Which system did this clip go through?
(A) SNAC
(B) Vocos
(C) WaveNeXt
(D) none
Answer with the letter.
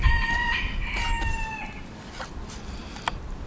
D